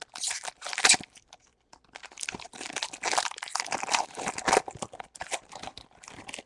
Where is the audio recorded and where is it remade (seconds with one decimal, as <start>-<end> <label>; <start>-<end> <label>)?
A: 0.0-6.5 recorded